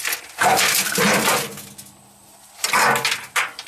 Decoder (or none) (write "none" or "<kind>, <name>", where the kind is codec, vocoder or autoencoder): none